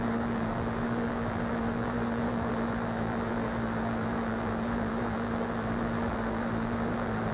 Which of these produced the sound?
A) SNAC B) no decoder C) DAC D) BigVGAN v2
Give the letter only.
D